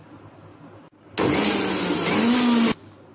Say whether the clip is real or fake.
real